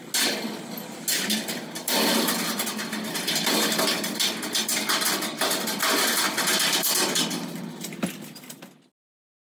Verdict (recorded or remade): recorded